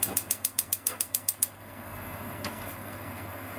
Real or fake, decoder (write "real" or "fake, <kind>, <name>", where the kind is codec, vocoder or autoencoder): fake, codec, SNAC